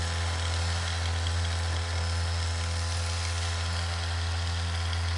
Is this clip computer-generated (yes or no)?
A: no